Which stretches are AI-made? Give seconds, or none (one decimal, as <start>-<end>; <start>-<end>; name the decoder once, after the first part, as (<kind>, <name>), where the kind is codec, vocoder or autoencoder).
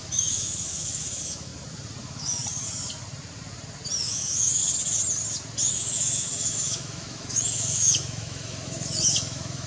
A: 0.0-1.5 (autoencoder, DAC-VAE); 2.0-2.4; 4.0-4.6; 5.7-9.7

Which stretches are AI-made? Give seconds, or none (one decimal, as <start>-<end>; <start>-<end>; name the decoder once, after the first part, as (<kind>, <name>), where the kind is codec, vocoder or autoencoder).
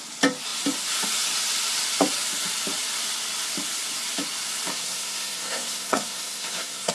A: 4.7-6.9 (codec, SNAC)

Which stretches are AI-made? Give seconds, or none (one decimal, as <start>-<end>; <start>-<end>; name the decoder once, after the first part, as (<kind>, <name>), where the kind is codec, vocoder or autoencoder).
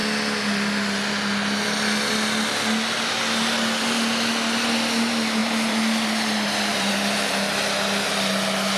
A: 5.4-6.9 (vocoder, BigVGAN v2)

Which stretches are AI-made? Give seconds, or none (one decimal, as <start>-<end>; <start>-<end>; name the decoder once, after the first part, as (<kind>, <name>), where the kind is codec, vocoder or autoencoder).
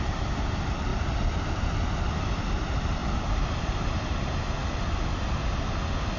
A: 0.9-2.4 (vocoder, BigVGAN v2); 3.0-4.1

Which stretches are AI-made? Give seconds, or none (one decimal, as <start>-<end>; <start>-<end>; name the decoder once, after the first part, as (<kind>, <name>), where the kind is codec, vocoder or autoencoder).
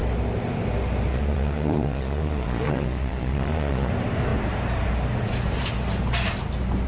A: 1.1-3.9 (vocoder, Vocos)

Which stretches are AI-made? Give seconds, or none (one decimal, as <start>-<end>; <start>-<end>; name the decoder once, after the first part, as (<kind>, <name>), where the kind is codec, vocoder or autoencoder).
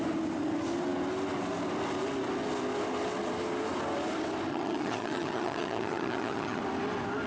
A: 4.5-6.6 (vocoder, HiFi-GAN)